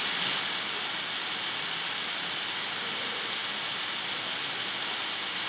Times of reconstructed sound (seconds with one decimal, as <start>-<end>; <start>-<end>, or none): none